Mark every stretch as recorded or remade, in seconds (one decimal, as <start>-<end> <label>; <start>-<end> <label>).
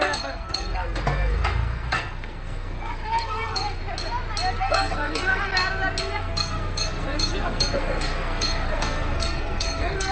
0.0-3.8 remade; 3.8-4.6 recorded; 4.6-5.5 remade; 5.5-6.0 recorded; 6.0-10.1 remade